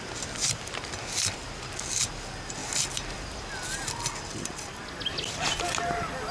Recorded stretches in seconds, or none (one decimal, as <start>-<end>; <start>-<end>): 0.0-6.3